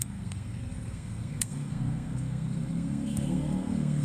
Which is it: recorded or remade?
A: remade